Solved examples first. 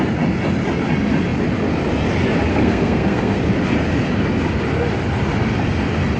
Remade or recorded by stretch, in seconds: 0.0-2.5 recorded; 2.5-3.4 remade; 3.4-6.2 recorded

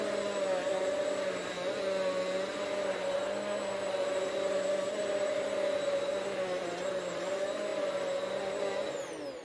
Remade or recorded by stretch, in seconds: 0.0-9.4 recorded

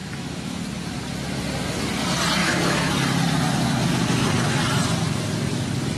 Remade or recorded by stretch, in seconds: 0.0-0.6 remade; 0.6-2.4 recorded; 2.4-2.9 remade; 2.9-6.0 recorded

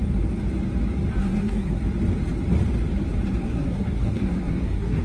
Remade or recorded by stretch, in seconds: 0.0-1.2 recorded; 1.2-1.8 remade; 1.8-3.4 recorded; 3.4-5.0 remade